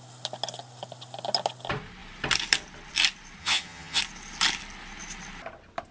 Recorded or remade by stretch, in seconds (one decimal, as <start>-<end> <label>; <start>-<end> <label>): 0.0-3.4 recorded; 3.4-4.0 remade; 4.0-5.9 recorded